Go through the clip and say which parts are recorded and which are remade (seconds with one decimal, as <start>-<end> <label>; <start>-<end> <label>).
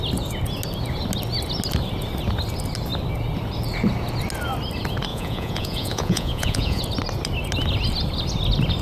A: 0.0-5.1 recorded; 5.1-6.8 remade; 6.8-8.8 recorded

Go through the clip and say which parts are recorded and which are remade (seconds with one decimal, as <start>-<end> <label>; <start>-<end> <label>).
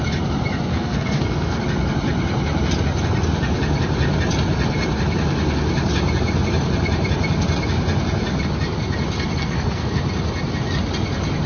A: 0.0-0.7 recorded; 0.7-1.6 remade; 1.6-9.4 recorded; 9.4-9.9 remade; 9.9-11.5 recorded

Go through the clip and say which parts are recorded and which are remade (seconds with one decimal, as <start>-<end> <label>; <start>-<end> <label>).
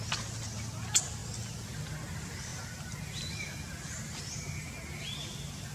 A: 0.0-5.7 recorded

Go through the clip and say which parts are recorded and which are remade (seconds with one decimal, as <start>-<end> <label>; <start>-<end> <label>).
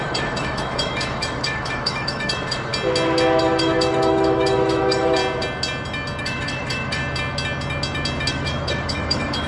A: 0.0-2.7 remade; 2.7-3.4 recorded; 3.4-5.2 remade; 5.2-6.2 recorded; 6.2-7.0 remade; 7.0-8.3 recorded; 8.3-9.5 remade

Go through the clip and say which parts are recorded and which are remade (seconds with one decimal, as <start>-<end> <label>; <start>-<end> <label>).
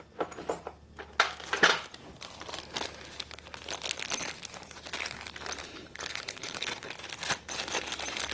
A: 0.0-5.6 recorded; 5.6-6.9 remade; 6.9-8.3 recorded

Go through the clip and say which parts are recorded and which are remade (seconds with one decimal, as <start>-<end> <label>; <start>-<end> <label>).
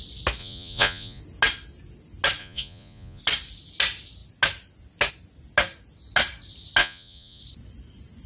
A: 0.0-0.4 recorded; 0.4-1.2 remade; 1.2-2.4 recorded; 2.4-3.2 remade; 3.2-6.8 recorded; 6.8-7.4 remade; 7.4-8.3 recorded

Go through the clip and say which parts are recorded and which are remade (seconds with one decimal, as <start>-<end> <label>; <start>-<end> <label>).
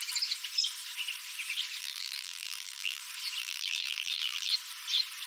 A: 0.0-1.8 recorded; 1.8-3.0 remade; 3.0-3.4 recorded; 3.4-4.5 remade; 4.5-5.3 recorded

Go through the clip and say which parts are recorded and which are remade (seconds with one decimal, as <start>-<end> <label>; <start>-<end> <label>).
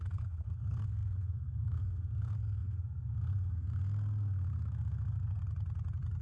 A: 0.0-5.4 remade; 5.4-6.2 recorded